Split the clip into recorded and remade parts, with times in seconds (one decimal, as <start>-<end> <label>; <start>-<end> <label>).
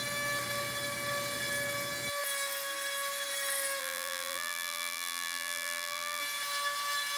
0.0-3.8 recorded; 3.8-6.2 remade; 6.2-7.2 recorded